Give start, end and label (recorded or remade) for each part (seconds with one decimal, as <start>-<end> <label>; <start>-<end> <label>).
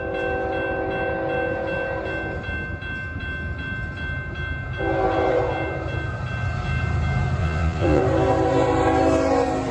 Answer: 0.0-7.4 recorded; 7.4-8.0 remade; 8.0-9.7 recorded